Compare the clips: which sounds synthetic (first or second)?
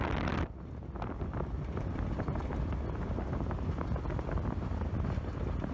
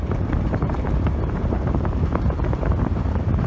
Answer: second